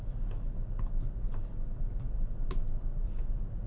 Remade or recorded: recorded